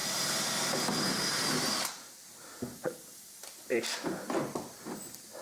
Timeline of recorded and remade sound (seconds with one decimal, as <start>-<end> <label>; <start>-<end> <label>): 0.0-0.9 remade; 0.9-1.3 recorded; 1.3-1.9 remade; 1.9-3.1 recorded; 3.1-5.4 remade